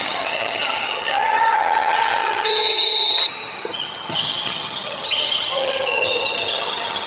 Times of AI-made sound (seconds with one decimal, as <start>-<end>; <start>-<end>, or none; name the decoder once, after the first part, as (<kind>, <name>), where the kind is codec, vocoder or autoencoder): 0.0-7.1 (vocoder, HiFi-GAN)